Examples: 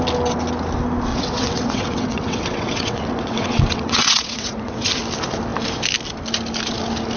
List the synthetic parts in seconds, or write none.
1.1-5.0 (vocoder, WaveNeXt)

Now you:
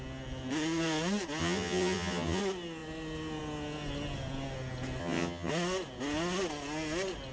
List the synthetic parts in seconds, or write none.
1.4-2.4 (vocoder, HiFi-GAN); 5.0-5.5

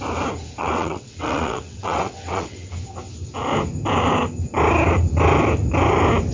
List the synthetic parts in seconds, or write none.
0.6-2.7 (vocoder, WaveNeXt)

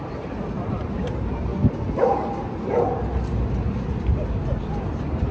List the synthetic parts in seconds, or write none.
0.0-1.5 (vocoder, BigVGAN v2); 4.7-5.3

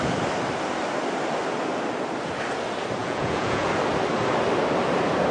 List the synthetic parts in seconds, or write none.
3.0-3.7 (vocoder, Vocos)

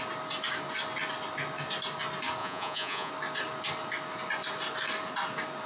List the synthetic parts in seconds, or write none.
2.4-3.1 (vocoder, Vocos)